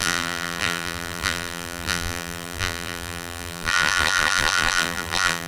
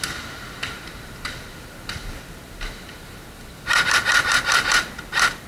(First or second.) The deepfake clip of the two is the first